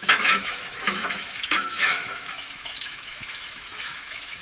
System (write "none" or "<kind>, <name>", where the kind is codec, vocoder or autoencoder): autoencoder, DAC-VAE